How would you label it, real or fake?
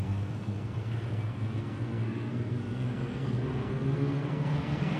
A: fake